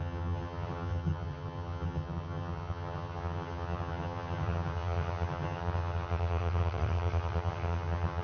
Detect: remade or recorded remade